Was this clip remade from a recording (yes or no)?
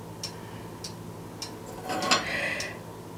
no